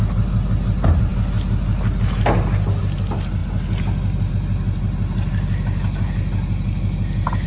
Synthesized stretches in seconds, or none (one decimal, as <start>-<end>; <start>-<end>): none